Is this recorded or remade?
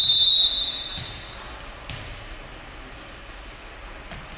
recorded